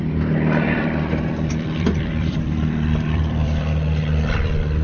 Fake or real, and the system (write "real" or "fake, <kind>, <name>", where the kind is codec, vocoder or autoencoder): fake, vocoder, BigVGAN v2